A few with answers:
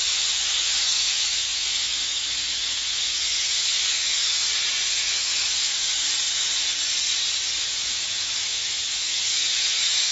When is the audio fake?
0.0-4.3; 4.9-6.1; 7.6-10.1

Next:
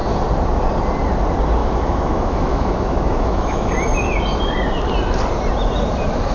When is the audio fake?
1.6-3.7